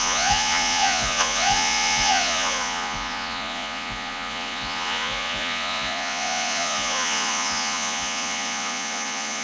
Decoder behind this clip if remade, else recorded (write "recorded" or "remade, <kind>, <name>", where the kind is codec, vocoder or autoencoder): remade, vocoder, Vocos